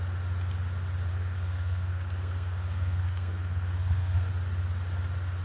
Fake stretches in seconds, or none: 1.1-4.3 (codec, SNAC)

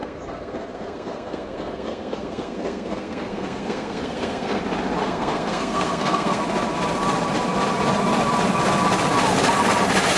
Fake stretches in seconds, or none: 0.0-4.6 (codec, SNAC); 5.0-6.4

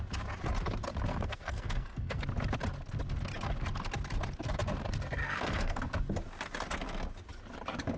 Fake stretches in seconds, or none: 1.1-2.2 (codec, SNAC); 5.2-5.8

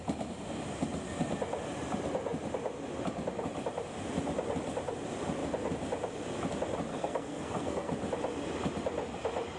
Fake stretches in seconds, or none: 6.9-7.9 (codec, SNAC)

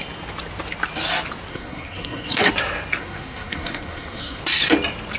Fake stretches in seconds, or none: 1.5-2.5 (codec, SNAC); 3.0-4.4

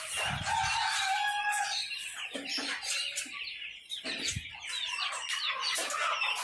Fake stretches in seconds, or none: none

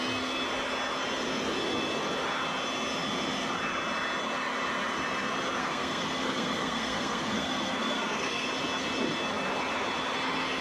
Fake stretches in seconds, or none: 5.6-8.5 (codec, SNAC)